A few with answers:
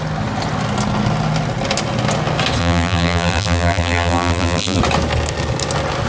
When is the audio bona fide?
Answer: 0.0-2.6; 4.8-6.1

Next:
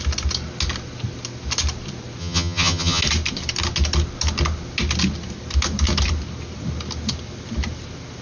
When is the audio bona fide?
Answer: 0.0-2.2; 3.0-8.2